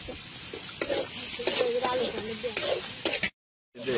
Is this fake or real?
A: real